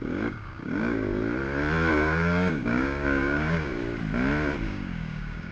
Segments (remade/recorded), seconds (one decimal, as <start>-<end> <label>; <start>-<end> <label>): 0.0-1.2 remade; 1.2-1.9 recorded; 1.9-3.8 remade; 3.8-4.6 recorded; 4.6-5.5 remade